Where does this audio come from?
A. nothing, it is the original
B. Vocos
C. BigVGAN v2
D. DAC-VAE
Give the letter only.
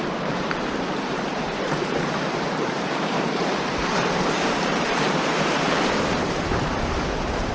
C